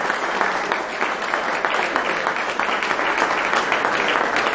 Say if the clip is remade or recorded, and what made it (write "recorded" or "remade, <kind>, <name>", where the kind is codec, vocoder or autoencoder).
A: recorded